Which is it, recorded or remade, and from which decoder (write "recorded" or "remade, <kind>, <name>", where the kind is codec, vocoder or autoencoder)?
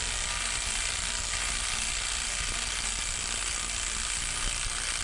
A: recorded